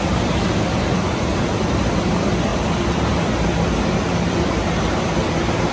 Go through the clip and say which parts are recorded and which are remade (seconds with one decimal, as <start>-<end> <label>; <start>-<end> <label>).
0.0-5.7 recorded